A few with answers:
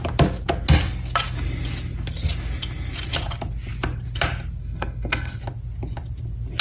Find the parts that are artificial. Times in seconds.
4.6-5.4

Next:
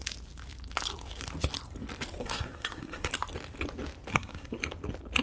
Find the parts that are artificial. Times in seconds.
2.2-3.1; 4.1-4.6